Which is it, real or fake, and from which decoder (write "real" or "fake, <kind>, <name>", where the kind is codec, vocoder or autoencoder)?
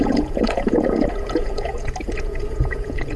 fake, vocoder, Vocos